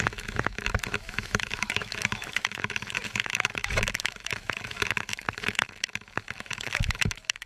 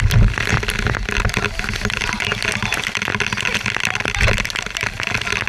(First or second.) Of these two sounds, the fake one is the first